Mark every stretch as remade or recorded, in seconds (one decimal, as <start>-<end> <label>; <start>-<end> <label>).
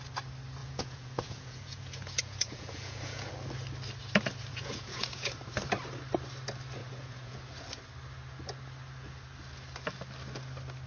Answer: 0.0-0.6 recorded; 0.6-3.3 remade; 3.3-4.5 recorded; 4.5-5.5 remade; 5.5-6.8 recorded; 6.8-7.4 remade; 7.4-10.9 recorded